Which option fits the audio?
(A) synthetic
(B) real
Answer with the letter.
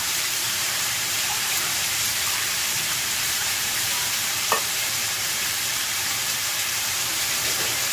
A